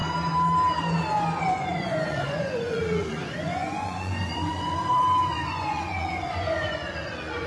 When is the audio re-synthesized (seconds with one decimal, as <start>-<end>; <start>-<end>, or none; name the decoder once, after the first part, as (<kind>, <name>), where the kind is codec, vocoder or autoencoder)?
1.4-7.5 (vocoder, Vocos)